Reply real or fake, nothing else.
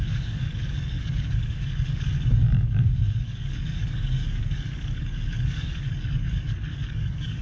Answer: fake